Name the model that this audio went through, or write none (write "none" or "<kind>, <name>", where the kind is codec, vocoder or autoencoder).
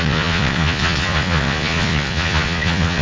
vocoder, Vocos